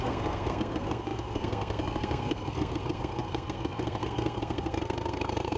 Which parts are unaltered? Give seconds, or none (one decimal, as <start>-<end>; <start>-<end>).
none